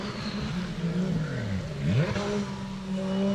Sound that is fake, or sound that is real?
real